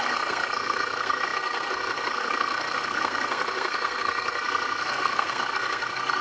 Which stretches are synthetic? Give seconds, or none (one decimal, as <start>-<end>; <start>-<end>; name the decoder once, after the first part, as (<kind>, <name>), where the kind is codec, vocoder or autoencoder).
0.0-6.2 (codec, SNAC)